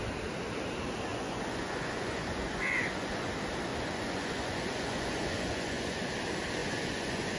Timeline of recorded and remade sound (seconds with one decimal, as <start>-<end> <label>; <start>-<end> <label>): 0.0-1.1 recorded; 1.1-3.3 remade; 3.3-3.7 recorded; 3.7-6.1 remade; 6.1-6.6 recorded; 6.6-7.4 remade